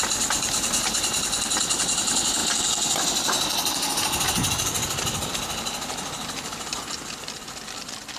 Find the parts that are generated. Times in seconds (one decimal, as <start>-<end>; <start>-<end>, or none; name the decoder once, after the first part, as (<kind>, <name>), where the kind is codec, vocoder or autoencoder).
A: none